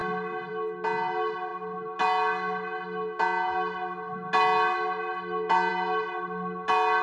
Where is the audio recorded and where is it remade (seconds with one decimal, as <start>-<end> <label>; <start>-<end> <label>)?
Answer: 0.0-7.0 recorded